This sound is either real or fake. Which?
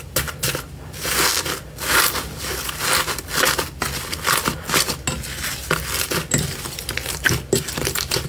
real